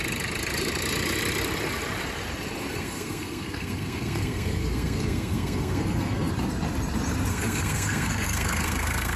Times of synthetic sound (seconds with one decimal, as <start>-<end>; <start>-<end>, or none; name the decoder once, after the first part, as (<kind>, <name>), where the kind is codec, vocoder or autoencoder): 2.7-6.3 (codec, SNAC); 7.3-9.2